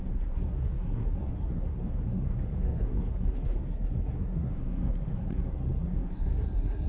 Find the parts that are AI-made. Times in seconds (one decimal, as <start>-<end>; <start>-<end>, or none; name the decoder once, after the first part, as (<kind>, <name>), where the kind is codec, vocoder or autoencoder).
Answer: 0.0-6.9 (codec, SNAC)